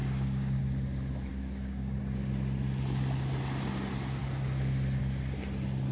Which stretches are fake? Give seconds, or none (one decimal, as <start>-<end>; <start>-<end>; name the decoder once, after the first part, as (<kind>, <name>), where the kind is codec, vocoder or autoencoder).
0.0-0.6 (codec, DAC); 1.3-2.0